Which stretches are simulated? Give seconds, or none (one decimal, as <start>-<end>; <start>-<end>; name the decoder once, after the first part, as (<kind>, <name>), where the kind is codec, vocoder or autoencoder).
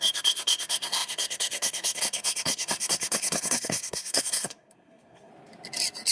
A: 0.0-5.3 (codec, SNAC)